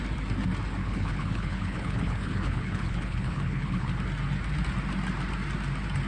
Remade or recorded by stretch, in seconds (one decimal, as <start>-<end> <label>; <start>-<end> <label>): 0.0-0.8 recorded; 0.8-3.9 remade; 3.9-6.1 recorded

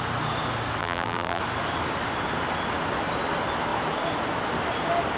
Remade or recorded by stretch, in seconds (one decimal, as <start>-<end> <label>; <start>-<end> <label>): 0.0-0.8 recorded; 0.8-1.4 remade; 1.4-5.2 recorded

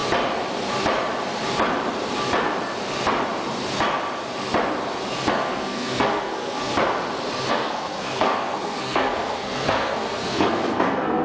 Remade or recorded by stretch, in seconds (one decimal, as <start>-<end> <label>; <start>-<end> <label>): 0.0-5.3 recorded; 5.3-6.7 remade; 6.7-7.5 recorded; 7.5-11.2 remade

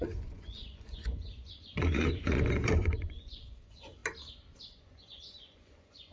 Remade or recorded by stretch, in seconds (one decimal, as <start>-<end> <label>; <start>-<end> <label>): 0.0-4.0 remade; 4.0-4.6 recorded; 4.6-6.1 remade

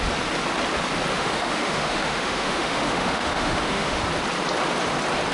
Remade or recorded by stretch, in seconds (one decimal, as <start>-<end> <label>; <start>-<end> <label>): 0.0-1.1 recorded; 1.1-4.0 remade; 4.0-5.3 recorded

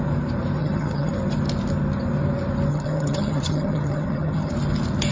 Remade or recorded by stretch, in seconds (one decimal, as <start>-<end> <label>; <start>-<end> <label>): 0.0-0.6 recorded; 0.6-1.1 remade; 1.1-2.7 recorded; 2.7-4.5 remade; 4.5-5.1 recorded

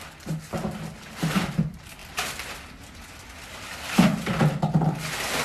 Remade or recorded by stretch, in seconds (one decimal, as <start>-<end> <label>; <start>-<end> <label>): 0.0-5.4 recorded

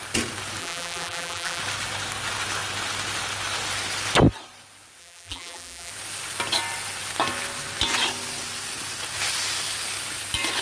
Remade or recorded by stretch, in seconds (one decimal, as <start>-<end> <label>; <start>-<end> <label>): 0.0-0.6 recorded; 0.6-1.6 remade; 1.6-5.0 recorded; 5.0-5.9 remade; 5.9-10.6 recorded